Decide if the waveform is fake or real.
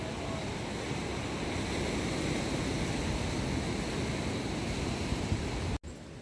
real